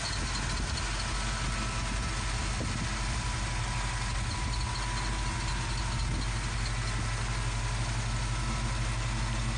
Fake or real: real